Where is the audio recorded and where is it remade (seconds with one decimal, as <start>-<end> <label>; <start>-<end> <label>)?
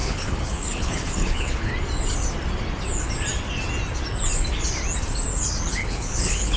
0.0-1.7 remade; 1.7-5.7 recorded; 5.7-6.6 remade